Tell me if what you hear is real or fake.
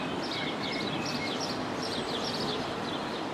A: real